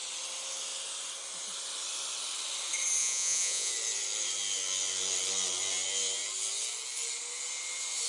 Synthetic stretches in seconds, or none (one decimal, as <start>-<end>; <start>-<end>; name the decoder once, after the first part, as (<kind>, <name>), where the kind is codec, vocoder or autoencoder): 3.0-3.7 (vocoder, Vocos)